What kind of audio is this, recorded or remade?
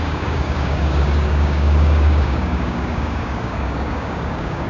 remade